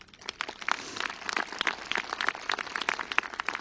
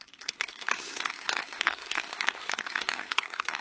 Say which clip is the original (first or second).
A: first